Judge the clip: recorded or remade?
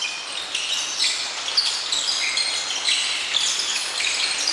recorded